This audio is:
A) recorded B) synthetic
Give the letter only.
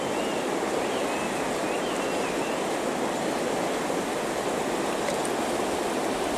A